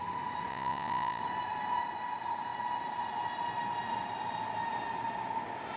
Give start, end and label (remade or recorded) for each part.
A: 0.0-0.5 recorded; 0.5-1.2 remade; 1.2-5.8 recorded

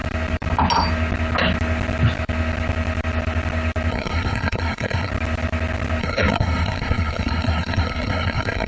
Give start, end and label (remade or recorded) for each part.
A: 0.0-3.9 recorded; 3.9-5.1 remade; 5.1-6.0 recorded; 6.0-8.7 remade

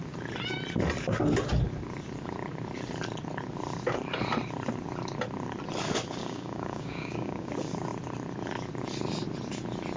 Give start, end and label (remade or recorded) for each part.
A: 0.0-6.2 recorded; 6.2-7.5 remade; 7.5-10.0 recorded

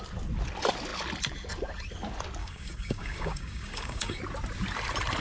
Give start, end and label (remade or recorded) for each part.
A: 0.0-2.4 recorded; 2.4-4.2 remade; 4.2-5.2 recorded

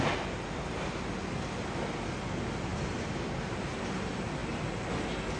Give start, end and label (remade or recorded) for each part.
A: 0.0-2.7 recorded; 2.7-3.6 remade; 3.6-5.4 recorded

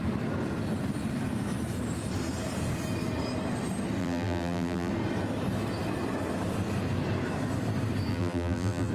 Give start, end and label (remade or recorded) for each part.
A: 0.0-4.0 recorded; 4.0-4.9 remade; 4.9-8.1 recorded; 8.1-8.9 remade

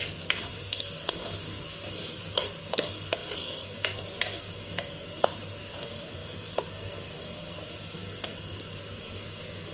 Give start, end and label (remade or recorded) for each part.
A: 0.0-9.7 remade